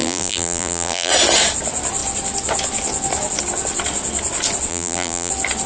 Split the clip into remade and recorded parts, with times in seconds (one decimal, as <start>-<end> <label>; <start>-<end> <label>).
0.0-1.1 remade; 1.1-4.7 recorded; 4.7-5.3 remade; 5.3-5.7 recorded

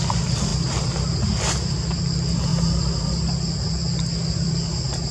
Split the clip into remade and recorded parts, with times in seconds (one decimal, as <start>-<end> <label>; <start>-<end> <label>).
0.0-0.5 remade; 0.5-2.0 recorded; 2.0-5.1 remade